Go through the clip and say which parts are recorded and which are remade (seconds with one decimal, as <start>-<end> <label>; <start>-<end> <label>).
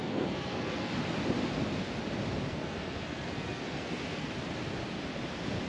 0.0-0.9 remade; 0.9-2.5 recorded; 2.5-4.3 remade; 4.3-5.7 recorded